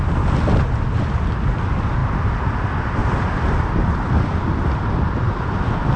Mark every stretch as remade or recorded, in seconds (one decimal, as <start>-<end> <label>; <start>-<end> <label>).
0.0-3.0 recorded; 3.0-4.9 remade; 4.9-6.0 recorded